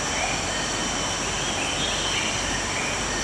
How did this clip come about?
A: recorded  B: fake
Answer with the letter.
A